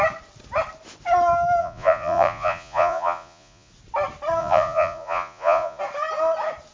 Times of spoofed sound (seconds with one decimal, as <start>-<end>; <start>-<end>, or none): 1.6-3.7; 4.4-5.8